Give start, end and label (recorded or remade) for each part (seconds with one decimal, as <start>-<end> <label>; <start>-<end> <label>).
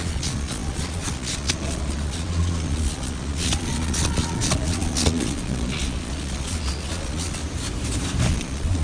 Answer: 0.0-7.4 remade; 7.4-8.3 recorded; 8.3-8.8 remade